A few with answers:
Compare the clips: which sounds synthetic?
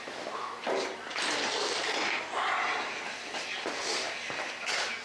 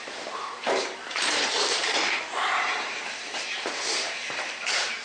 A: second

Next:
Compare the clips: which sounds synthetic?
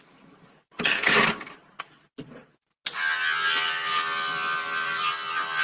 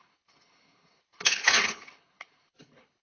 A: second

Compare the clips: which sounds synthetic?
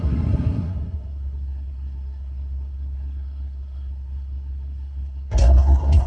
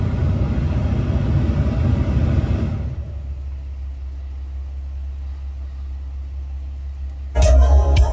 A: first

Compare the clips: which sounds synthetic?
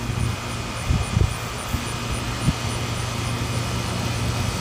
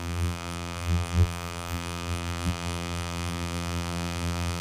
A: second